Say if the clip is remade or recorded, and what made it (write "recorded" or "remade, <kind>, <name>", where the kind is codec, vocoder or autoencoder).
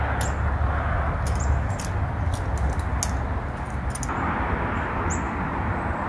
recorded